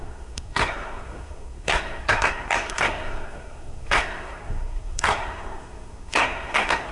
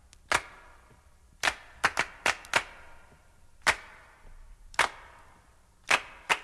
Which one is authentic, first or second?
second